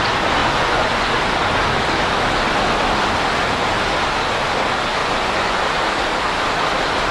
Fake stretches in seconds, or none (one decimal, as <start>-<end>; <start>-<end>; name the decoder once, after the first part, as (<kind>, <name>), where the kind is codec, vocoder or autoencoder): 0.4-1.1 (vocoder, Vocos); 5.0-5.6